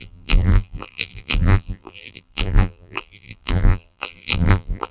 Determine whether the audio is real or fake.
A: fake